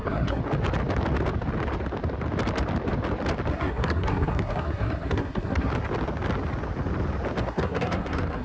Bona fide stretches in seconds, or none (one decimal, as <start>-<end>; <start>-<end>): 0.4-3.5; 5.7-7.4